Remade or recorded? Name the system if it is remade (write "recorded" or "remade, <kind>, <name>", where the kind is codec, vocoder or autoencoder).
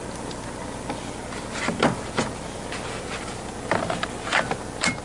recorded